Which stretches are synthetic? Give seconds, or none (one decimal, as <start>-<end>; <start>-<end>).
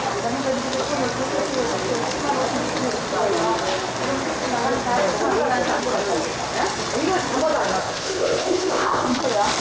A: 7.8-9.2